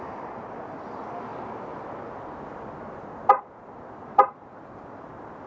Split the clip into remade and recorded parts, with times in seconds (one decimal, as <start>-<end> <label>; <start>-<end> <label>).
0.0-5.5 recorded